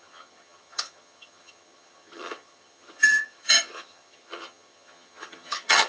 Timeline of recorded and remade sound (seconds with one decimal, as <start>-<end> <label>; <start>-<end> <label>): 0.0-5.9 remade

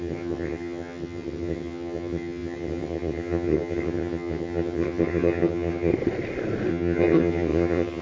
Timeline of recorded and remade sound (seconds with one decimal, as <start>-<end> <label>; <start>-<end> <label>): 0.0-5.9 remade; 5.9-6.7 recorded; 6.7-8.0 remade